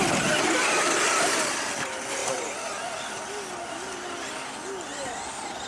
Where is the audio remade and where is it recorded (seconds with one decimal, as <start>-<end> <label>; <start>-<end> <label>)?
0.0-5.7 recorded